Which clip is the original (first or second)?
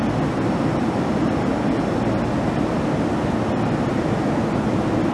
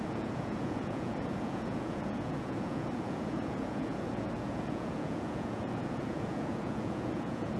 first